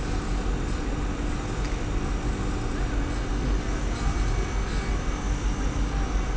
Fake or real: real